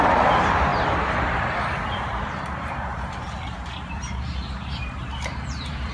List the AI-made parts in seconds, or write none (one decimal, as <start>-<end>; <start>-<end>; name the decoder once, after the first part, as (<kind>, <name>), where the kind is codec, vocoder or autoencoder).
0.0-5.9 (vocoder, BigVGAN v2)